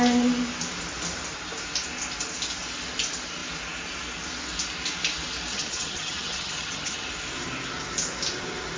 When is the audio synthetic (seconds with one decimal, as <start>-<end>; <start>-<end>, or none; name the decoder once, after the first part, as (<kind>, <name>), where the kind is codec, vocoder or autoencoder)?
5.5-7.1 (vocoder, HiFi-GAN)